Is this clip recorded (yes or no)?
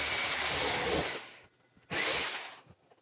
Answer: yes